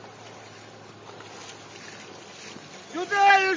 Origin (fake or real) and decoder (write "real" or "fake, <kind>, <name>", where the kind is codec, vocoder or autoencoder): real